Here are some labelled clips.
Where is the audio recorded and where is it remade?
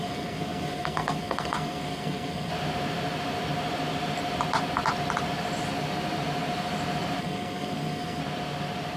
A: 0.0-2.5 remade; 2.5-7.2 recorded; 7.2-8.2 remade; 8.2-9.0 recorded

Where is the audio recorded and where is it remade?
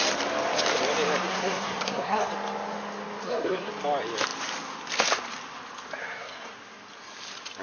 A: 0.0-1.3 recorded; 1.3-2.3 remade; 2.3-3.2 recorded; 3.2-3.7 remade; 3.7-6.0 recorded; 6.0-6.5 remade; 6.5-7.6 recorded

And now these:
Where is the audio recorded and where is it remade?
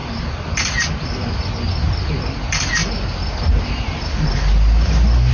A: 0.0-5.3 recorded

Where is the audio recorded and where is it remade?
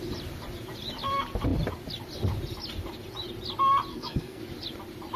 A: 0.0-3.9 recorded; 3.9-4.4 remade; 4.4-5.2 recorded